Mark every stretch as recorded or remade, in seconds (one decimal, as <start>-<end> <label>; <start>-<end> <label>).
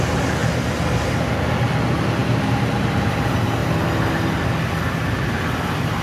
0.0-6.0 recorded